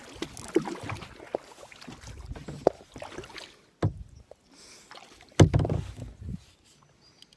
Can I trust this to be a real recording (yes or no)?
yes